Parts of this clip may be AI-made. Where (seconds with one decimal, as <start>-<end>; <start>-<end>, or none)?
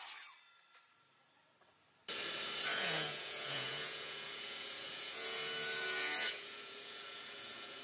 2.7-7.8